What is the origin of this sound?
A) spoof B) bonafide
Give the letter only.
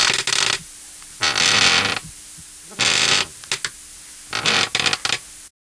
B